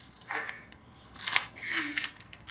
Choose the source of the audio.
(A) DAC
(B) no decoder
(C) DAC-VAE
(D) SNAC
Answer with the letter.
D